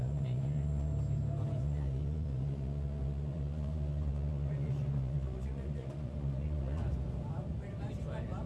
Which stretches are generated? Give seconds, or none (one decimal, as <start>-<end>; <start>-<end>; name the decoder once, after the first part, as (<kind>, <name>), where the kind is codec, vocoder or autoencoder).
0.0-0.9 (vocoder, Vocos); 1.6-6.8